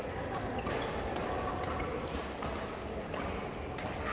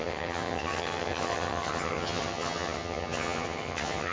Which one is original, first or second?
first